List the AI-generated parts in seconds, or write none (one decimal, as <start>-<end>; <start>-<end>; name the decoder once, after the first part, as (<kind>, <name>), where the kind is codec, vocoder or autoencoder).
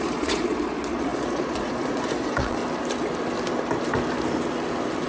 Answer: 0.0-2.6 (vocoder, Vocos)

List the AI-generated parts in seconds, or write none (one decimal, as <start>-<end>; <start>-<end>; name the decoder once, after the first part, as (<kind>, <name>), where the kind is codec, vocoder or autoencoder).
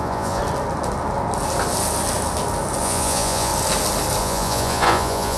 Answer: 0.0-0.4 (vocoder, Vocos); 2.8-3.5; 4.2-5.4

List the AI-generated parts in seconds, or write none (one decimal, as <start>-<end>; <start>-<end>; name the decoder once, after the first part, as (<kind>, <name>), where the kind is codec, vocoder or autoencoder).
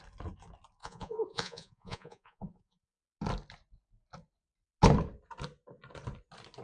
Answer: 0.8-3.0 (vocoder, Vocos)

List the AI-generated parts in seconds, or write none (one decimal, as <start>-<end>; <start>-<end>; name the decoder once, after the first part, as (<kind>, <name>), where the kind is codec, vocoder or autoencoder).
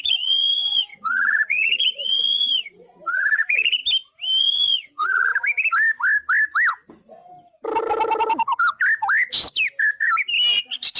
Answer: 0.0-3.8 (vocoder, Vocos); 4.4-5.3; 10.5-11.0